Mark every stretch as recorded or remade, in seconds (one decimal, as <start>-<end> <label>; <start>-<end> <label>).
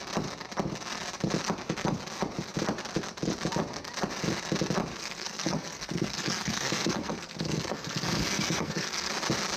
0.0-4.9 recorded; 4.9-9.1 remade; 9.1-9.6 recorded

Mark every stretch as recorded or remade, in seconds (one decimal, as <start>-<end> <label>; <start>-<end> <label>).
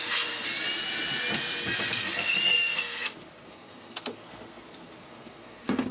0.0-0.5 remade; 0.5-1.9 recorded; 1.9-5.9 remade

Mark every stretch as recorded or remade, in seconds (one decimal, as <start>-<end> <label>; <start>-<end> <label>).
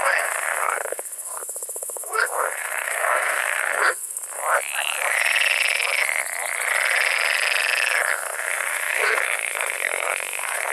0.0-4.4 remade; 4.4-8.1 recorded; 8.1-10.7 remade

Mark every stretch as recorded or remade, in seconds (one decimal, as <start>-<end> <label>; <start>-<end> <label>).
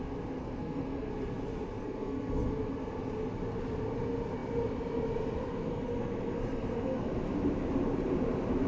0.0-0.4 recorded; 0.4-1.1 remade; 1.1-1.8 recorded; 1.8-2.5 remade; 2.5-5.7 recorded; 5.7-7.1 remade; 7.1-8.7 recorded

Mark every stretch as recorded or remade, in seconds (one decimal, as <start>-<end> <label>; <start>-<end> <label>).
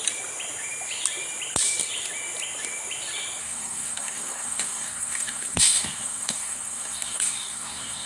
0.0-3.4 recorded; 3.4-8.1 remade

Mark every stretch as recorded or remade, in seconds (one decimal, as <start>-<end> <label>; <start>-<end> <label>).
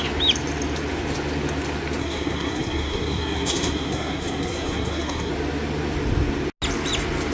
0.0-2.0 recorded; 2.0-5.3 remade; 5.3-7.3 recorded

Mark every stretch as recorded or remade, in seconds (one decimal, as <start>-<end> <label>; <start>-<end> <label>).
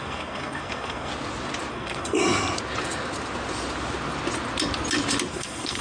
0.0-1.1 remade; 1.1-1.7 recorded; 1.7-2.2 remade; 2.2-5.3 recorded; 5.3-5.8 remade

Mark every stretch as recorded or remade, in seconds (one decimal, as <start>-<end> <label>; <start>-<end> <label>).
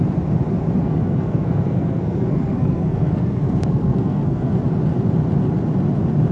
0.0-0.8 recorded; 0.8-4.6 remade; 4.6-6.3 recorded